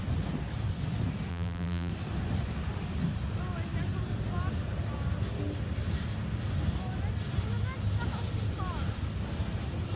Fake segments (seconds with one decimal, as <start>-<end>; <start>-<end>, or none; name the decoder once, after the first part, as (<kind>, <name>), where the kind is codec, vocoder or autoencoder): 1.3-1.9 (vocoder, BigVGAN v2)